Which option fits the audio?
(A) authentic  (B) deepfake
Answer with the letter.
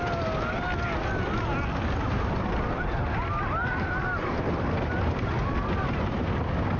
A